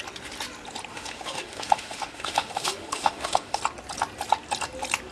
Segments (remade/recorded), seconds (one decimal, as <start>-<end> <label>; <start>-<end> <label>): 0.0-0.9 recorded; 0.9-3.6 remade; 3.6-5.1 recorded